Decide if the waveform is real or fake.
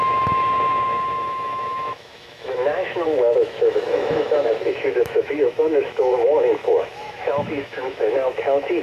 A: fake